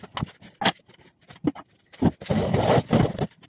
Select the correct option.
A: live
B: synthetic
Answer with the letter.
A